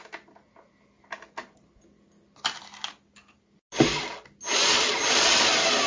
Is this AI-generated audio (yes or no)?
no